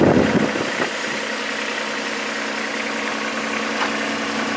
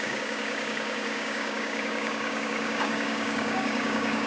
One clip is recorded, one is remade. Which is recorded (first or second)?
first